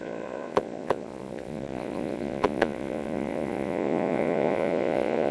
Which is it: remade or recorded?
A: remade